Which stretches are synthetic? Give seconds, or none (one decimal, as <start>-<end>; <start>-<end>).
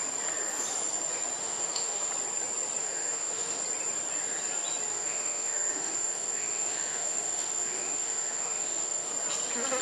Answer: 1.4-2.1; 2.8-3.6; 4.9-9.1